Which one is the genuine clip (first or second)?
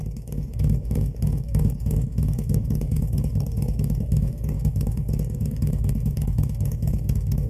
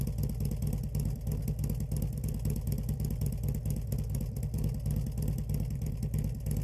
second